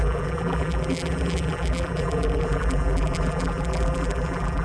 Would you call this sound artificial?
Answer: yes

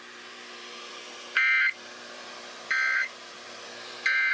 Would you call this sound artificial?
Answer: yes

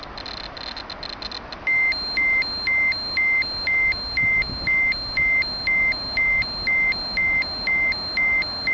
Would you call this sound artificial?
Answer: no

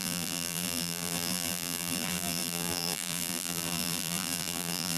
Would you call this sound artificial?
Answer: yes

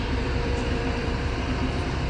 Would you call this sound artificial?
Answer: yes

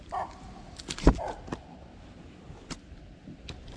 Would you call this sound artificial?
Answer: no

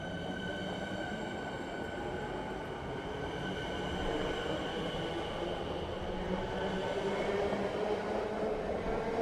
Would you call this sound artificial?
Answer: no